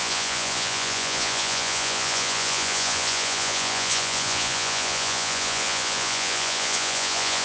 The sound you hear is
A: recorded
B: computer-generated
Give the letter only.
B